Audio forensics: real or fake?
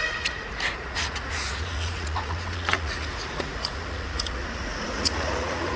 fake